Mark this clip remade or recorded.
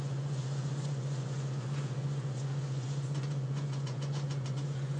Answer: remade